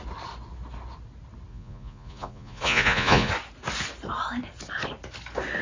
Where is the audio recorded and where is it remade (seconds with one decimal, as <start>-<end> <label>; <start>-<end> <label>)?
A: 0.0-1.5 recorded; 1.5-3.3 remade; 3.3-5.6 recorded